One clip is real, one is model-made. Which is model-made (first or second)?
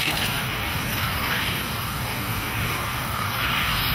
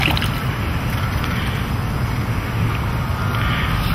first